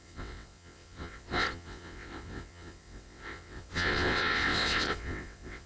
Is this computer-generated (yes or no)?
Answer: yes